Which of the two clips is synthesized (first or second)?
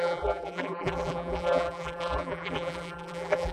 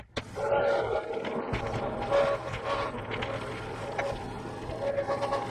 first